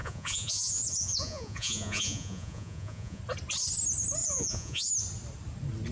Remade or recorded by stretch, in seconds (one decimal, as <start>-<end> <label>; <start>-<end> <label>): 0.0-3.2 remade; 3.2-4.2 recorded; 4.2-4.9 remade; 4.9-5.9 recorded